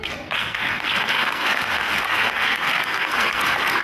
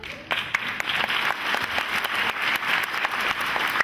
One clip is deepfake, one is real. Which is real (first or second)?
second